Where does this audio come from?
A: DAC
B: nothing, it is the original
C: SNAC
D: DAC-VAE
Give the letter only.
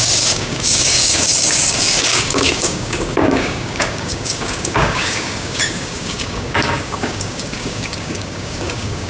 A